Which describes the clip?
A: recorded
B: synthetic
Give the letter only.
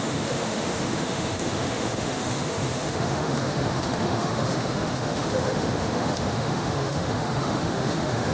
B